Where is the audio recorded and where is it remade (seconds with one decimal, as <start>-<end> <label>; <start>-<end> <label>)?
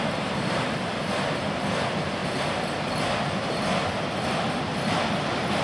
0.0-5.6 recorded